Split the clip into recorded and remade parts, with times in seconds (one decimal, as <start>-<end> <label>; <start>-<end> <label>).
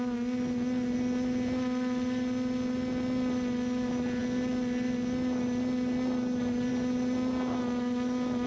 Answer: 0.0-8.5 recorded